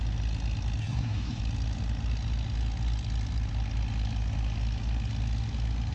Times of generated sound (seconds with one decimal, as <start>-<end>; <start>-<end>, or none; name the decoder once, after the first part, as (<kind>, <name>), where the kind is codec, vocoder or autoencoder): 0.8-1.4 (codec, SNAC)